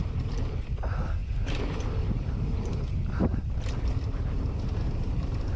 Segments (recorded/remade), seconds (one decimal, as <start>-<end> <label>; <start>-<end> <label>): 0.0-1.2 recorded; 1.2-1.8 remade; 1.8-3.3 recorded; 3.3-5.6 remade